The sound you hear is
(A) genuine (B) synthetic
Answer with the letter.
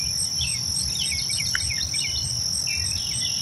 A